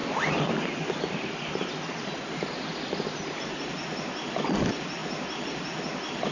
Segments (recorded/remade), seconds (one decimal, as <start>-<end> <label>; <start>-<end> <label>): 0.0-6.3 recorded